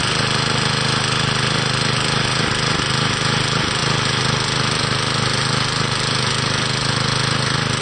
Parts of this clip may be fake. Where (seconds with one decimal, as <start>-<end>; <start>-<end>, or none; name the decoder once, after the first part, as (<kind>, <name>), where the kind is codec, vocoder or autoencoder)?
none